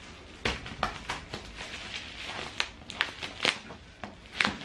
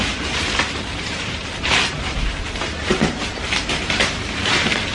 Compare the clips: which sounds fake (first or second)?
second